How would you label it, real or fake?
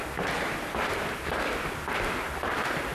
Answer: real